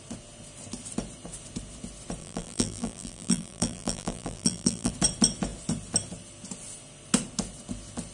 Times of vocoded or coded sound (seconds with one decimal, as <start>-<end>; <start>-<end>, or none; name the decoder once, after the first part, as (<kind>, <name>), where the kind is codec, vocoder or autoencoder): 2.2-4.9 (vocoder, BigVGAN v2)